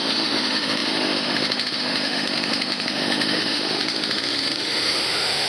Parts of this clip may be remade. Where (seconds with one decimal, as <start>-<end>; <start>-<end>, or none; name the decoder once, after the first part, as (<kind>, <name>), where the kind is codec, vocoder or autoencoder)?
0.0-5.5 (autoencoder, DAC-VAE)